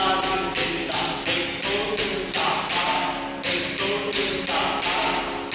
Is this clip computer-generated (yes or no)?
no